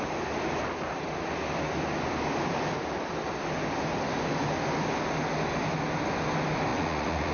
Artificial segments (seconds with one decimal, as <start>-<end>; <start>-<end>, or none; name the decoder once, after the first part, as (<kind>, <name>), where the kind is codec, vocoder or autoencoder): 6.7-7.3 (vocoder, Vocos)